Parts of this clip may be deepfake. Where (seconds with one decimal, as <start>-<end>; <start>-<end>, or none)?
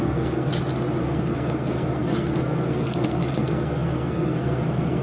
0.0-0.5; 1.0-5.0